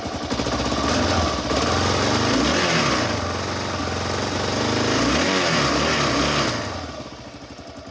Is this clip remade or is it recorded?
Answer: recorded